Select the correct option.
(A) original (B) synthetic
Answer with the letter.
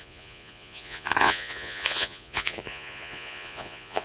B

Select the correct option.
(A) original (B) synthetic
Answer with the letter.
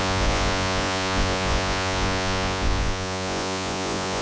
B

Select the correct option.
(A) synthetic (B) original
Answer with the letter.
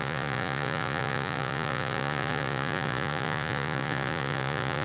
A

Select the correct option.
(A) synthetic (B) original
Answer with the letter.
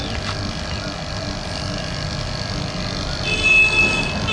B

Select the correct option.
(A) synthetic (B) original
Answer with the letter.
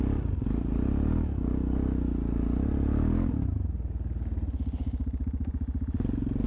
B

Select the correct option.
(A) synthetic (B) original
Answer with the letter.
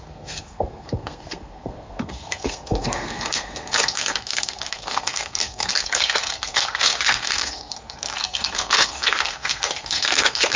A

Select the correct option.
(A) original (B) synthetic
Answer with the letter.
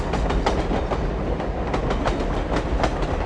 A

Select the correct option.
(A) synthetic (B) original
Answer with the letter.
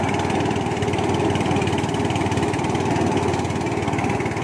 B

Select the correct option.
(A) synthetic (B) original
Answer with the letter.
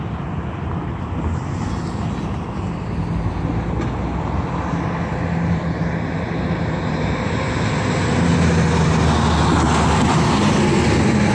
B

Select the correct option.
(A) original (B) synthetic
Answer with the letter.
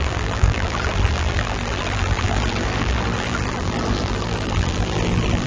B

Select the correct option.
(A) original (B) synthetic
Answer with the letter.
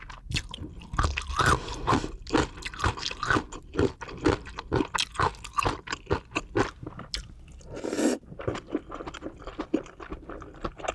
A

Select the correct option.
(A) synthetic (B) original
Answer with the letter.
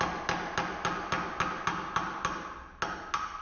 B